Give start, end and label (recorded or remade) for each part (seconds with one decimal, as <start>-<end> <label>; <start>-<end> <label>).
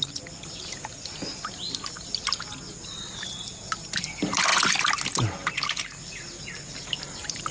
0.0-7.5 recorded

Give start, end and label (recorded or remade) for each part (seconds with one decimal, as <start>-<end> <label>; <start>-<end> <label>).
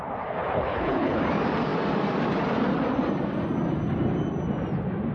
0.0-0.4 recorded; 0.4-1.2 remade; 1.2-5.1 recorded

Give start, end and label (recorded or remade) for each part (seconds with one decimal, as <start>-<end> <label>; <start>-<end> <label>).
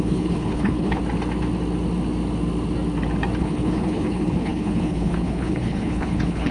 0.0-1.0 remade; 1.0-3.4 recorded; 3.4-6.5 remade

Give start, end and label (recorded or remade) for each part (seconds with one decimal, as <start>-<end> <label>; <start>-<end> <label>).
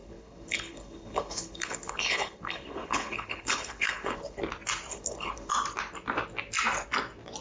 0.0-4.4 remade; 4.4-4.9 recorded; 4.9-5.5 remade; 5.5-7.4 recorded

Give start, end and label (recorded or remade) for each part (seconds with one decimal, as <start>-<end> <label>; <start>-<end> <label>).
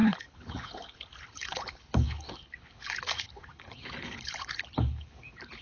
0.0-5.6 remade